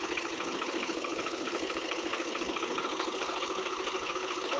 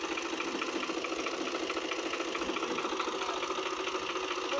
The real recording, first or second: second